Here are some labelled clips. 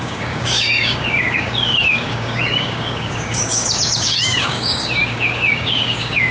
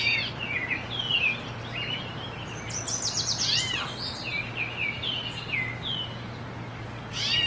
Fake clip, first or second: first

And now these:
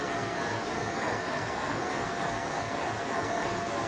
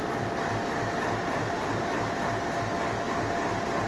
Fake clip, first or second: first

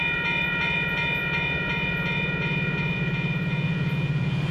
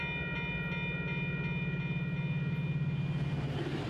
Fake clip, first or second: first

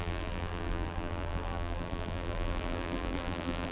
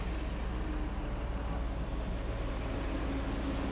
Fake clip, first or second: first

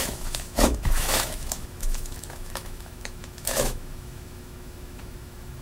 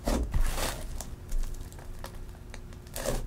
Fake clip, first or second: first